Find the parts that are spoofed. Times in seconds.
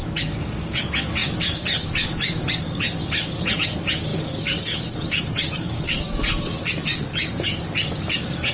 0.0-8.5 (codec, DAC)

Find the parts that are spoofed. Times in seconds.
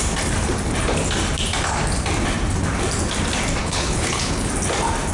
3.6-4.5 (codec, HILCodec)